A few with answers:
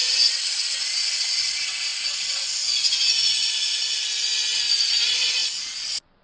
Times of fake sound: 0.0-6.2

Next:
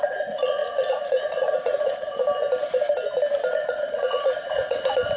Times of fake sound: 0.0-2.2; 3.5-5.2